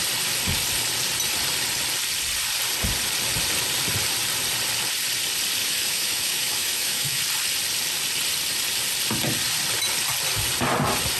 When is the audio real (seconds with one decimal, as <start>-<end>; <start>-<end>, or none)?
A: 0.0-5.6; 7.2-11.2